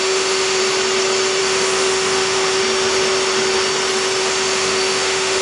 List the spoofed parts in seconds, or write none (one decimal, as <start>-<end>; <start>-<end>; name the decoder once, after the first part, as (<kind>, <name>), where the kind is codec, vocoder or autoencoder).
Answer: 0.0-0.6 (autoencoder, DAC-VAE); 1.4-2.6; 4.2-5.4